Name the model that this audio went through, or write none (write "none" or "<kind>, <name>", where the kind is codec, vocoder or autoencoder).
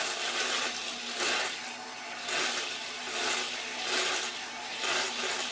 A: none